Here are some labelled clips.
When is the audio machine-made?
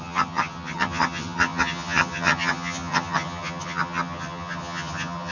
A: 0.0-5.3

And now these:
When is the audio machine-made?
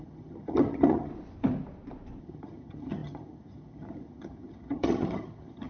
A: 0.0-1.1; 2.2-5.7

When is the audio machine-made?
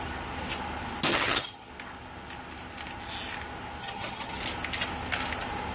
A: 1.1-1.7; 3.8-4.4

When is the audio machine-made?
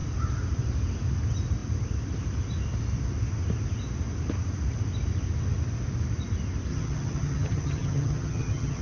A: 6.7-8.8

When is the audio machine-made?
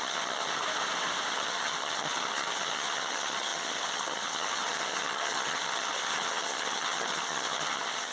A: 0.0-0.5; 1.3-8.1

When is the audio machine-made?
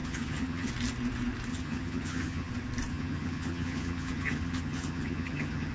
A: 0.0-0.7; 1.5-2.5; 2.9-5.7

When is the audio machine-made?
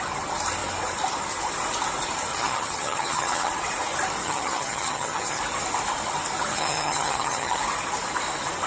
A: 2.3-3.5; 4.2-5.4; 6.5-7.6